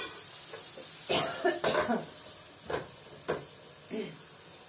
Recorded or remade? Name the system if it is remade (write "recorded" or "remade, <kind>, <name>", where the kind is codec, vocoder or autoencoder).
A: recorded